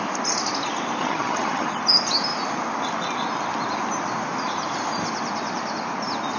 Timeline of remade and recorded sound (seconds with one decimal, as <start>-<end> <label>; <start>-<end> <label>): 0.0-1.0 recorded; 1.0-1.7 remade; 1.7-6.4 recorded

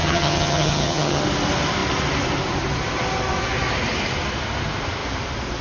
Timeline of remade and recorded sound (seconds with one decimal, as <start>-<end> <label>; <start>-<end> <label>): 0.0-1.2 remade; 1.2-5.6 recorded

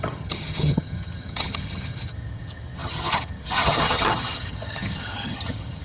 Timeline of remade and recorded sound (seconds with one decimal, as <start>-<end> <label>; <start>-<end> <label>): 0.0-5.8 remade

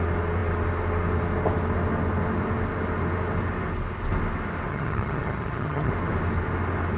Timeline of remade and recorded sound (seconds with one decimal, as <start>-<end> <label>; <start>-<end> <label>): 0.0-4.7 recorded; 4.7-5.9 remade; 5.9-7.0 recorded

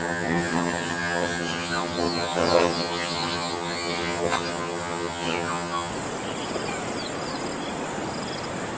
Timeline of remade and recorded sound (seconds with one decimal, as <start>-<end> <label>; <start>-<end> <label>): 0.0-5.9 remade; 5.9-8.8 recorded

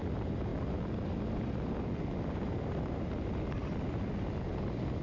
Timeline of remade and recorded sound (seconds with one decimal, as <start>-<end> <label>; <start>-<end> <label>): 0.0-5.0 recorded